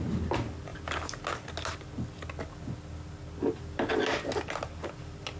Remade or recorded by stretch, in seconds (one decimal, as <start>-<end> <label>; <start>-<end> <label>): 0.0-5.4 recorded